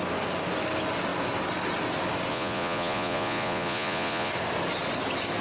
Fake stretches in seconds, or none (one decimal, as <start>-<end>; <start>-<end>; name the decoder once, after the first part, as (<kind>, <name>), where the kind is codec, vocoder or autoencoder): 2.3-4.3 (vocoder, Vocos)